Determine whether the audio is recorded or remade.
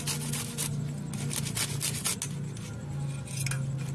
recorded